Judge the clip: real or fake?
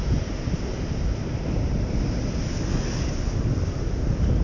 real